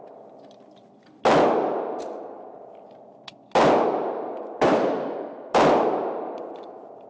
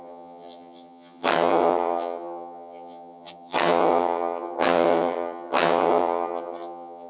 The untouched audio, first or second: first